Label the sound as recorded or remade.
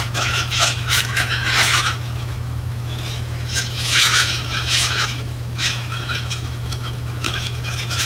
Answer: remade